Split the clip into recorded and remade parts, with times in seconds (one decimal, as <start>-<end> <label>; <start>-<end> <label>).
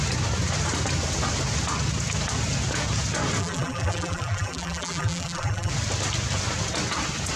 0.0-3.4 recorded; 3.4-5.7 remade; 5.7-7.4 recorded